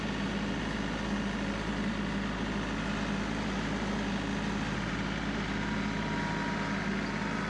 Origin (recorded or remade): recorded